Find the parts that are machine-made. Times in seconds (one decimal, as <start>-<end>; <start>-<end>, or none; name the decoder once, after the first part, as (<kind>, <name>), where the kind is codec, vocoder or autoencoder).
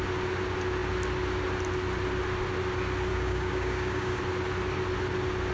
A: 3.1-4.2 (codec, DAC)